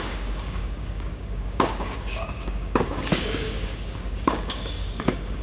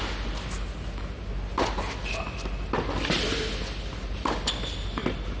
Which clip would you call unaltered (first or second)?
second